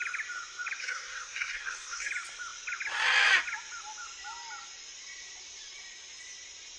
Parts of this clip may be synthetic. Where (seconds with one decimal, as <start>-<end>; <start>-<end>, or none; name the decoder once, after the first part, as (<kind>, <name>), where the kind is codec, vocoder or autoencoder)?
0.8-2.1 (codec, SNAC)